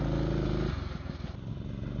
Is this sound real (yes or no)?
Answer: yes